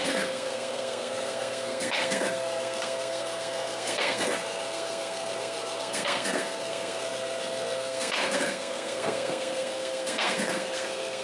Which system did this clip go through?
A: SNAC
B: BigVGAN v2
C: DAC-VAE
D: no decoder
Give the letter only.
A